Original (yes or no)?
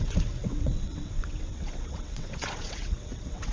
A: no